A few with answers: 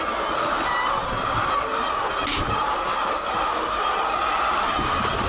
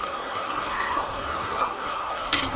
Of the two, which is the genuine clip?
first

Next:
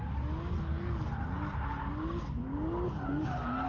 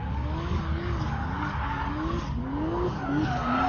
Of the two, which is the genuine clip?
first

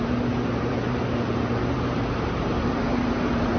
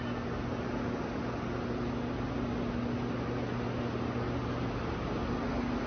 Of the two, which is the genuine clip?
second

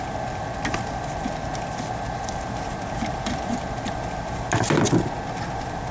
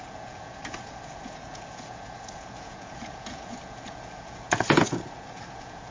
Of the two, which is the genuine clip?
first